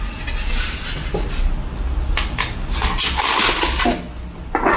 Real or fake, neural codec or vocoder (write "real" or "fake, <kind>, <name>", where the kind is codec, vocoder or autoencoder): real